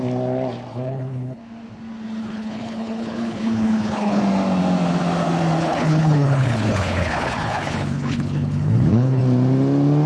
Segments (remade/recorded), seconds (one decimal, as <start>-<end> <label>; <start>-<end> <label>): 0.0-0.7 recorded; 0.7-1.4 remade; 1.4-2.2 recorded; 2.2-4.2 remade; 4.2-5.6 recorded; 5.6-9.2 remade; 9.2-10.1 recorded